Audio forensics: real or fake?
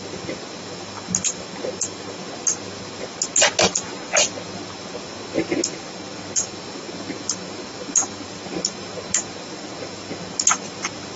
real